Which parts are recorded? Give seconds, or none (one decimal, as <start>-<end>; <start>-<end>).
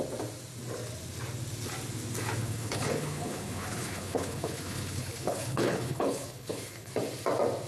0.0-2.4; 6.9-7.7